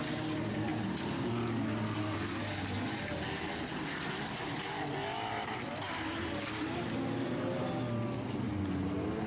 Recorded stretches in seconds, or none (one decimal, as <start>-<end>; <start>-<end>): 0.0-9.3